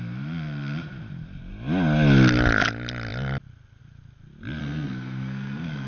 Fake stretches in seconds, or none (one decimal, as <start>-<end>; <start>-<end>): 4.6-5.9